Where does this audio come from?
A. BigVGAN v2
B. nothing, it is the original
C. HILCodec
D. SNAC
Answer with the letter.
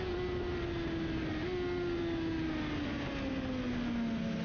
B